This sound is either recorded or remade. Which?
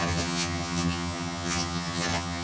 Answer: remade